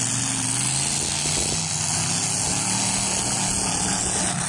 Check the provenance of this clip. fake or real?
real